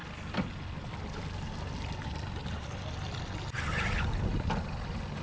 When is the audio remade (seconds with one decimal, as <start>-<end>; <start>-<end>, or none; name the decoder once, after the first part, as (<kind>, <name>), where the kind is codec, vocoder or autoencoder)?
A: none